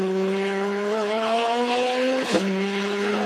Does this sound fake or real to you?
fake